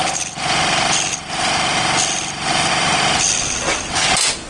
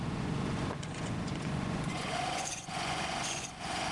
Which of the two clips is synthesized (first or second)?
second